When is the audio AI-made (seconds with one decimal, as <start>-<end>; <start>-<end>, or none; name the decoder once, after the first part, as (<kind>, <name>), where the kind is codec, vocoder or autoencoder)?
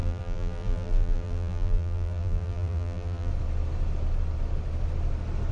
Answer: 0.0-3.3 (vocoder, BigVGAN v2)